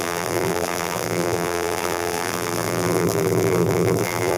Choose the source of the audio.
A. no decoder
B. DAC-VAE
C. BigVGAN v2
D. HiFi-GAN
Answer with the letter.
C